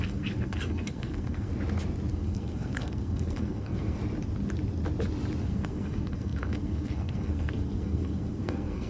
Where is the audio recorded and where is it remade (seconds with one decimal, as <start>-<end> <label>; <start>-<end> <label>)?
0.0-1.5 remade; 1.5-2.1 recorded; 2.1-4.0 remade; 4.0-5.4 recorded; 5.4-8.9 remade